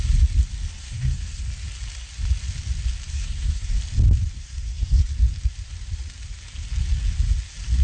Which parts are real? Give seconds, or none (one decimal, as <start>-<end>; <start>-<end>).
0.0-0.8; 1.4-3.1; 3.8-4.4; 5.1-7.8